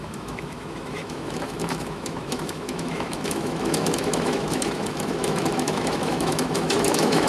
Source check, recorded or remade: remade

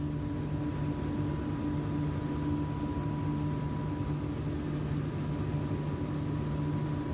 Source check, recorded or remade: recorded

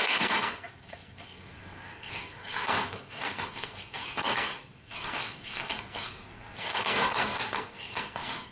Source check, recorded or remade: remade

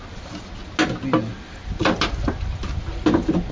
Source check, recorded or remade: recorded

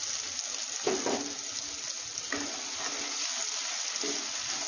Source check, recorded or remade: recorded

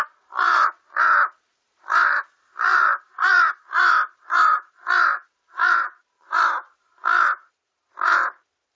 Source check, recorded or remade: remade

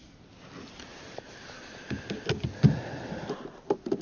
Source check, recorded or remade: recorded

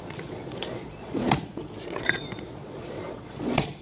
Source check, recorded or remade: remade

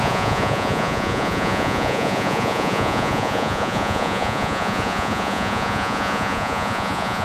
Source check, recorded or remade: remade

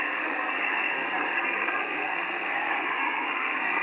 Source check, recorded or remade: remade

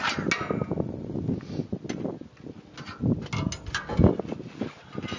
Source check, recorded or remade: recorded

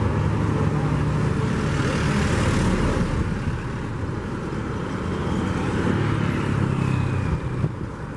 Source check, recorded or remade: recorded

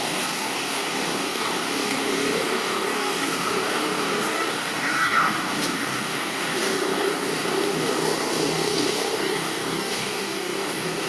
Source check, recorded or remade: remade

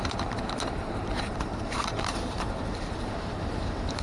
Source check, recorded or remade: remade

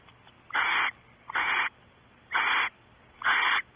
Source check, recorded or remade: recorded